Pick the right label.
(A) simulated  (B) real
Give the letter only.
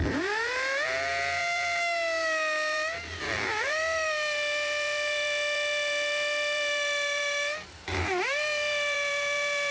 A